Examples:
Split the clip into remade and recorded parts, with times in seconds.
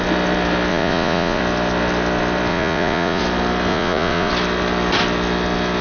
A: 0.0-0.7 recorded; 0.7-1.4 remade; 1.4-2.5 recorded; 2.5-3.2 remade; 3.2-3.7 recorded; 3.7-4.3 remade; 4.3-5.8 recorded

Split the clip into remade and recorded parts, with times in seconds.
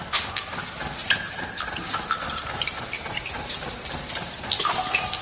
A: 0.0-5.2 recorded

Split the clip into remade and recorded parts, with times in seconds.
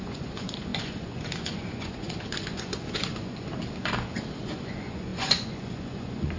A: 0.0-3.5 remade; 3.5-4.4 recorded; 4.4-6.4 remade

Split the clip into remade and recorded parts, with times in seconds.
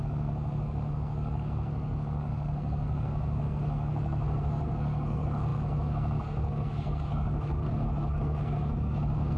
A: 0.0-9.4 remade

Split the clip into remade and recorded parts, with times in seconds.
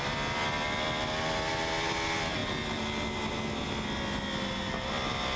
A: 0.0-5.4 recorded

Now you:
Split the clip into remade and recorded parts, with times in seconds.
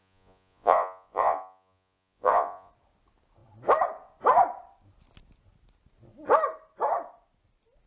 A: 0.0-2.7 remade; 2.7-7.9 recorded